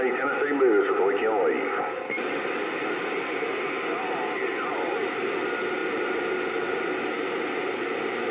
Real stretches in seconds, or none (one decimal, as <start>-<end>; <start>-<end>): 0.0-8.3